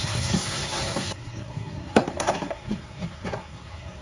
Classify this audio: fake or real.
fake